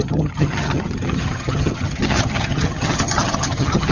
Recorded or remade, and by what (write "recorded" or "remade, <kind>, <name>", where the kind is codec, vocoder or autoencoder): remade, vocoder, HiFi-GAN